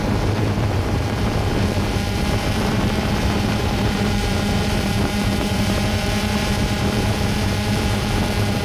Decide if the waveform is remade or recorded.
remade